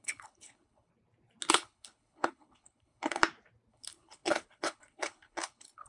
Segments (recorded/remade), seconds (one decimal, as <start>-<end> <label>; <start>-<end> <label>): 0.0-0.9 remade; 0.9-1.5 recorded; 1.5-3.2 remade; 3.2-3.7 recorded; 3.7-5.9 remade